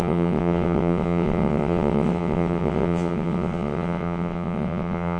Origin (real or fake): fake